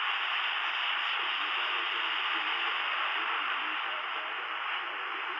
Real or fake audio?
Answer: real